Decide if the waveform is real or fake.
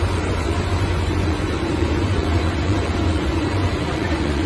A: fake